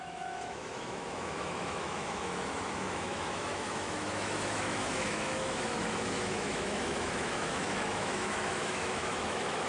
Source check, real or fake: fake